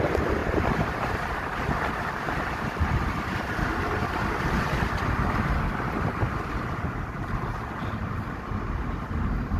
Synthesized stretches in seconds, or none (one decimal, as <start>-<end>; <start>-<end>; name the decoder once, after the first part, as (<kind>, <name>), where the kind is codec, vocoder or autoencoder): 0.4-5.1 (vocoder, BigVGAN v2)